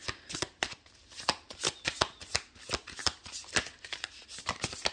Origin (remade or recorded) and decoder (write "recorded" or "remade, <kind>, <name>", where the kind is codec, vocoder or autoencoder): recorded